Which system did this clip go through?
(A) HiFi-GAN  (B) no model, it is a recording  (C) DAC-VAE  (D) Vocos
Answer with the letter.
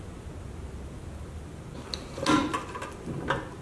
B